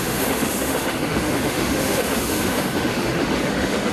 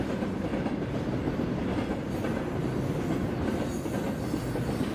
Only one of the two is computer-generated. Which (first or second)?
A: first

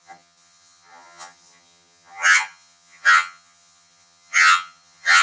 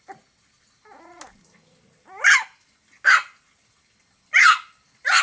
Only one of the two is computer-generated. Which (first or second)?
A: first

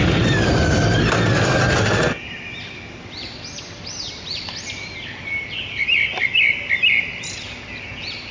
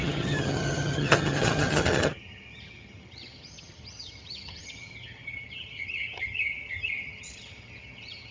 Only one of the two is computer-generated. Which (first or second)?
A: second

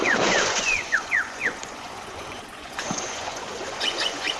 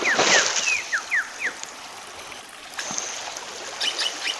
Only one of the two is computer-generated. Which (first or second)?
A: first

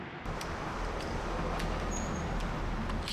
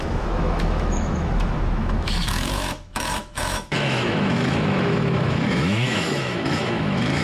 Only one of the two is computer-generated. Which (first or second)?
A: second